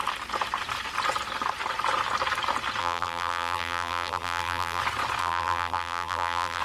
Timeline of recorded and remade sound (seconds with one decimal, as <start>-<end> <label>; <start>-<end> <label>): 0.0-2.8 recorded; 2.8-4.8 remade; 4.8-5.2 recorded; 5.2-6.6 remade